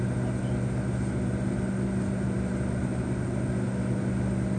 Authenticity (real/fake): real